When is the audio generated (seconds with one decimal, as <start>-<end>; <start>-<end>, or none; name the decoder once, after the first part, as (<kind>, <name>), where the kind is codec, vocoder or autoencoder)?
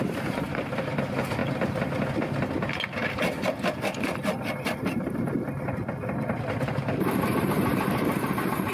0.0-1.4 (vocoder, BigVGAN v2); 6.6-8.7